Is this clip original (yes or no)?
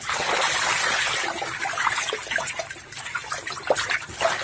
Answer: yes